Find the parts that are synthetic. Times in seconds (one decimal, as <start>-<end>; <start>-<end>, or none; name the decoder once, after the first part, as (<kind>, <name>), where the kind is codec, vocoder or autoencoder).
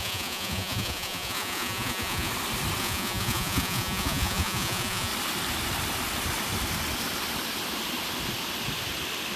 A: 0.0-2.3 (vocoder, Vocos); 2.8-5.1